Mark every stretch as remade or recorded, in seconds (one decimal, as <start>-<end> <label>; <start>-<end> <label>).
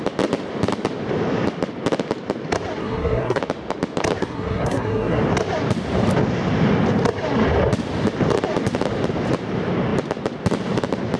0.0-2.8 recorded; 2.8-3.4 remade; 3.4-4.2 recorded; 4.2-5.2 remade; 5.2-11.2 recorded